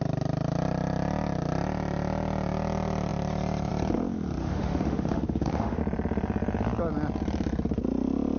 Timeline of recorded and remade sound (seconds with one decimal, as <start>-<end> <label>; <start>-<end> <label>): 0.0-4.4 recorded; 4.4-5.8 remade; 5.8-8.4 recorded

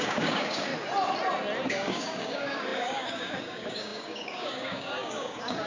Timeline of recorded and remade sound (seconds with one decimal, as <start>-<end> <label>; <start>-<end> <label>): 0.0-0.7 remade; 0.7-1.7 recorded; 1.7-5.7 remade

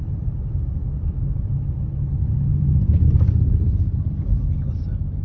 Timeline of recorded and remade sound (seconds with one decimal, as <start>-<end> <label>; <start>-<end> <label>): 0.0-2.5 recorded; 2.5-4.5 remade; 4.5-5.2 recorded

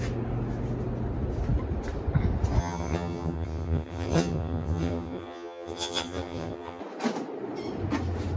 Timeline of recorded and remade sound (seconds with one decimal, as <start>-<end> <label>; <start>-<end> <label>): 0.0-2.6 recorded; 2.6-6.8 remade; 6.8-8.4 recorded

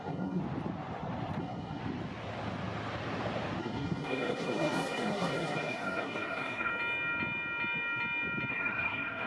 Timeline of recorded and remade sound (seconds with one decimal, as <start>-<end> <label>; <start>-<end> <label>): 0.0-0.4 remade; 0.4-1.4 recorded; 1.4-1.8 remade; 1.8-3.6 recorded; 3.6-6.7 remade; 6.7-8.5 recorded; 8.5-9.3 remade

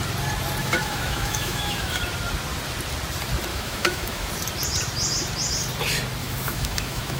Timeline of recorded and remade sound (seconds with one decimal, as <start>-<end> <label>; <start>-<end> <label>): 0.0-0.6 recorded; 0.6-2.0 remade; 2.0-3.5 recorded; 3.5-4.3 remade; 4.3-6.2 recorded; 6.2-7.2 remade

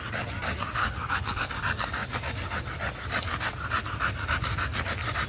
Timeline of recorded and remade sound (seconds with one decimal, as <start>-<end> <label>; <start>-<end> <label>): 0.0-0.8 recorded; 0.8-1.5 remade; 1.5-5.3 recorded